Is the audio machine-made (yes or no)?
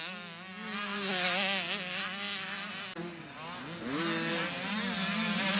no